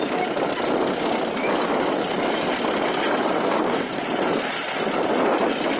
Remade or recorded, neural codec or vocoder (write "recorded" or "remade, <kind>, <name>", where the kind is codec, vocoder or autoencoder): recorded